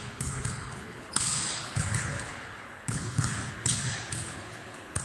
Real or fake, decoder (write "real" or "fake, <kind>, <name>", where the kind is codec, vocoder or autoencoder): fake, codec, HILCodec